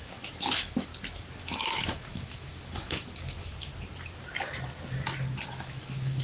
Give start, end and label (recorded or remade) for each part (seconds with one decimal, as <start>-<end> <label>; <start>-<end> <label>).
0.0-0.9 remade; 0.9-1.4 recorded; 1.4-3.7 remade; 3.7-5.5 recorded; 5.5-6.2 remade